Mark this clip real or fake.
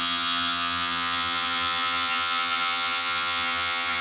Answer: fake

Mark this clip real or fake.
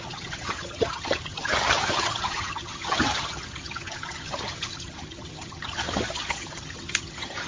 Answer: fake